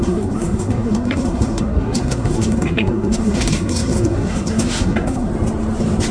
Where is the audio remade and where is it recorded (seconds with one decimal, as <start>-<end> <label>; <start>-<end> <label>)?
0.0-5.3 remade; 5.3-6.1 recorded